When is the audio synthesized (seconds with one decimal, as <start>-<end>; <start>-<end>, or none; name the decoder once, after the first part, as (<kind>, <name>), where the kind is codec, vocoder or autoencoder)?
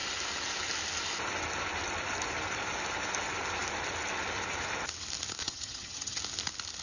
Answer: 5.4-6.2 (vocoder, HiFi-GAN)